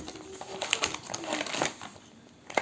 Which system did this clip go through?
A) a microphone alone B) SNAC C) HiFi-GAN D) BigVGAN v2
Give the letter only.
A